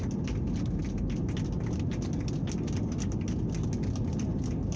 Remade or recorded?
recorded